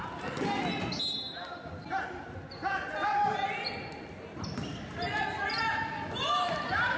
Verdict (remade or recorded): recorded